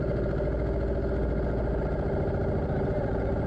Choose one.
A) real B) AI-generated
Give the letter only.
A